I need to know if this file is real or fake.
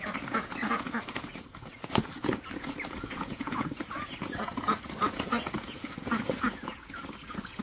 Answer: fake